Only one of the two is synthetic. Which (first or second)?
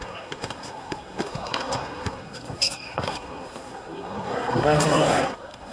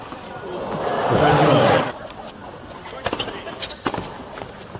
first